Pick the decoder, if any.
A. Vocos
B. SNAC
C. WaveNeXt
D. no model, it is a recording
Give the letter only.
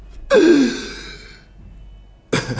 D